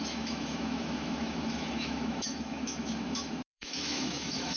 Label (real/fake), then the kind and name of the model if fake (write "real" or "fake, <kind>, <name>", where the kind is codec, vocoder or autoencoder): fake, autoencoder, DAC-VAE